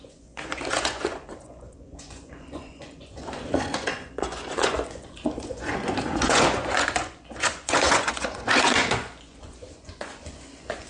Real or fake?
fake